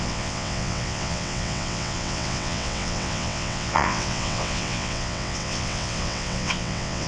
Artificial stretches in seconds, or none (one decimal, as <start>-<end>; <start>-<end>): 0.0-7.1